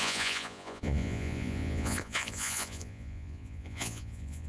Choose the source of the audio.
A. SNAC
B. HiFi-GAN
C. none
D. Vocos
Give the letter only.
D